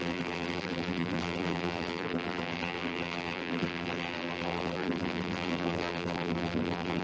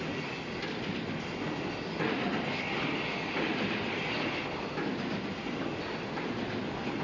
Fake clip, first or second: first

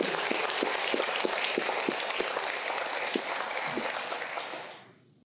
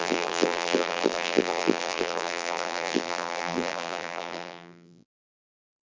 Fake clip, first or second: second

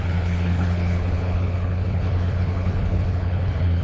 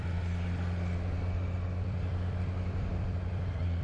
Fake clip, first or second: first